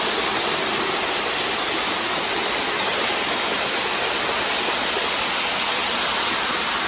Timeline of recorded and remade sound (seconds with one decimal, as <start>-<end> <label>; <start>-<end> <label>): 0.0-6.9 recorded